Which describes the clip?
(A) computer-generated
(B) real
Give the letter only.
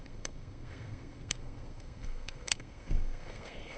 A